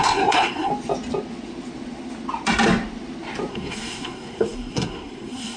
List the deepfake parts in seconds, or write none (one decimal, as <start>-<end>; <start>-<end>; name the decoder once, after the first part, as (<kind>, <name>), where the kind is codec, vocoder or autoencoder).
0.0-0.7 (codec, SNAC); 3.5-5.6